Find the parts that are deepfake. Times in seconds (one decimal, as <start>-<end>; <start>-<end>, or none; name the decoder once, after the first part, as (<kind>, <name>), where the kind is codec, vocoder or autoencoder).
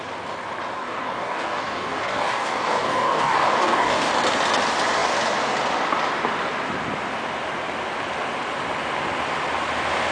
0.8-4.1 (codec, DAC)